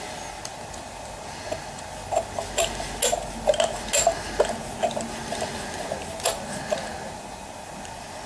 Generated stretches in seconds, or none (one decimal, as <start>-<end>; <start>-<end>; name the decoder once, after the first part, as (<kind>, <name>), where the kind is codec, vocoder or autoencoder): none